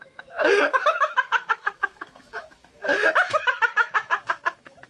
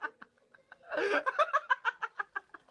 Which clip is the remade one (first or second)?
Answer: first